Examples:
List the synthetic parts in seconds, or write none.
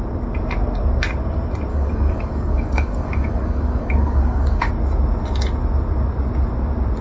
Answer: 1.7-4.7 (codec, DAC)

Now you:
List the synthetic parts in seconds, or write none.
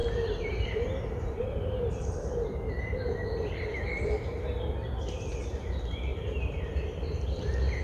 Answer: 0.0-4.7 (vocoder, BigVGAN v2); 6.1-7.8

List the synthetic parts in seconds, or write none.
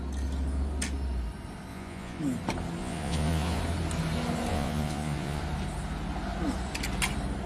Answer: 1.7-2.2 (vocoder, Vocos); 2.8-3.6; 4.5-5.4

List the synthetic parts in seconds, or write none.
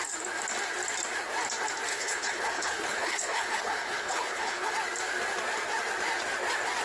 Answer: 1.9-4.7 (codec, HILCodec)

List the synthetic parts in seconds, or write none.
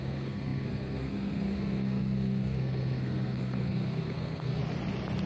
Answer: 0.0-4.6 (codec, SNAC)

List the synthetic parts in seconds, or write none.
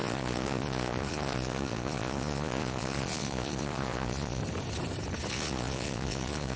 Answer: 0.0-4.4 (vocoder, Vocos); 5.3-6.6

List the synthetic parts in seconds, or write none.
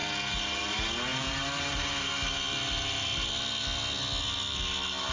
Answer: 1.1-2.1 (vocoder, BigVGAN v2)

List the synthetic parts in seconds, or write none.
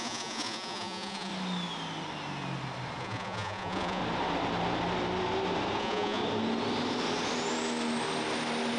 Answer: 0.0-1.3 (vocoder, Vocos); 3.0-4.0; 5.8-6.2